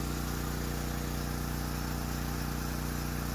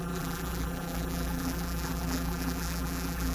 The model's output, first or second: second